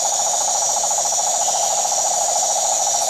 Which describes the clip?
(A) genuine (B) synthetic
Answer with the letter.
A